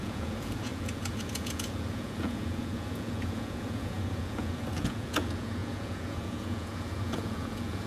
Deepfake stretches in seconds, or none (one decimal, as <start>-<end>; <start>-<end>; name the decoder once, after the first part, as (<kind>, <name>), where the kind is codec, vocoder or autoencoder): 0.0-7.9 (vocoder, Vocos)